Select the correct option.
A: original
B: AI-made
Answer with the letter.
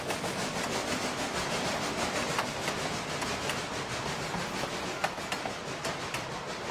A